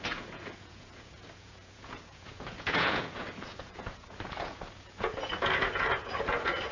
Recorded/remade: remade